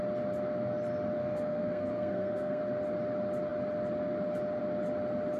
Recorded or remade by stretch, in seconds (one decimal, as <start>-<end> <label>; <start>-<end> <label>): 0.0-1.2 recorded; 1.2-2.6 remade; 2.6-5.4 recorded